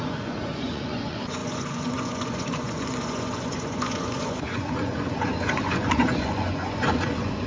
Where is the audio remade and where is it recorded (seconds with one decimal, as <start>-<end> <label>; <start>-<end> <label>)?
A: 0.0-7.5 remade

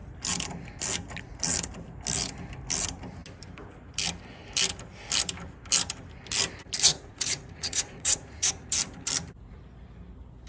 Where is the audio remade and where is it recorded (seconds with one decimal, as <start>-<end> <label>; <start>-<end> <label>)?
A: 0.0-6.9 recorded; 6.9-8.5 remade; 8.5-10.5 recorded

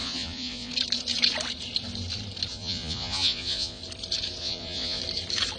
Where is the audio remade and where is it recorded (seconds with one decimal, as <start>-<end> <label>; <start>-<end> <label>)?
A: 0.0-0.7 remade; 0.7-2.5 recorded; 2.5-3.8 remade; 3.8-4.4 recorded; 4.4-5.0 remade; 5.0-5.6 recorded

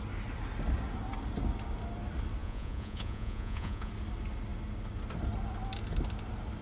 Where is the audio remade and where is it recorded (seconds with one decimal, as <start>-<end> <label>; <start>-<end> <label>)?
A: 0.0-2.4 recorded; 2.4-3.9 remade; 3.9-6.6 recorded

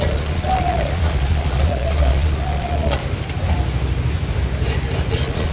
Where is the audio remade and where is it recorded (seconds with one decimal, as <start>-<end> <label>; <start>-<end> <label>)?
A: 0.0-3.0 remade; 3.0-5.1 recorded; 5.1-5.5 remade